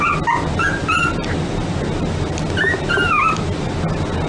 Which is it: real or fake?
real